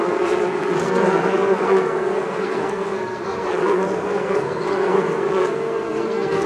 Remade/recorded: remade